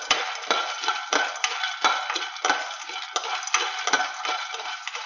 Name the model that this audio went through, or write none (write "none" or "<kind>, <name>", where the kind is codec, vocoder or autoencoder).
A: none